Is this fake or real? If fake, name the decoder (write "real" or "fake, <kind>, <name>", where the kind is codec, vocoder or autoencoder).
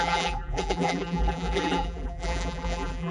fake, vocoder, BigVGAN v2